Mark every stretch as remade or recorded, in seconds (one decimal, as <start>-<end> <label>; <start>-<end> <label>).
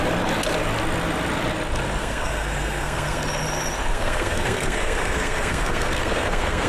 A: 0.0-2.0 recorded; 2.0-3.2 remade; 3.2-3.9 recorded; 3.9-6.7 remade